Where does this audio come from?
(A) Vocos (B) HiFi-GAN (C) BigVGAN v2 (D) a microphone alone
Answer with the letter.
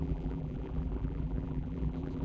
C